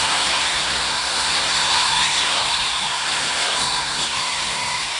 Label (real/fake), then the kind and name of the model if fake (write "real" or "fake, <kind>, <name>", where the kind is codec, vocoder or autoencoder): fake, codec, SNAC